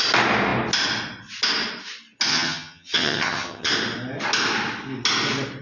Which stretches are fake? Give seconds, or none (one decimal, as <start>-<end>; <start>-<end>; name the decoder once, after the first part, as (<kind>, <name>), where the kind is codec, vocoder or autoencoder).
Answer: 2.3-3.7 (vocoder, HiFi-GAN)